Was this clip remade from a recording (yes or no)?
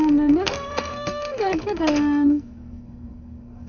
yes